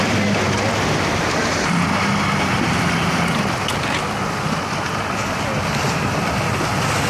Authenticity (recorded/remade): recorded